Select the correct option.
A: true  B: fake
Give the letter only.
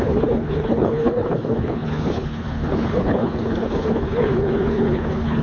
B